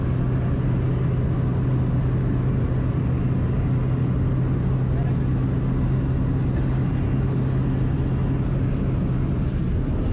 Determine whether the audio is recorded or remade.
recorded